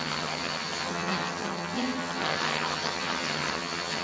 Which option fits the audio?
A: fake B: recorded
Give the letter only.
A